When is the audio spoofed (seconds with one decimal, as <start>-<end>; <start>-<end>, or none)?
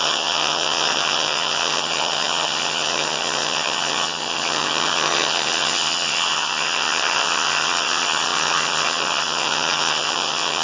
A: 0.0-10.6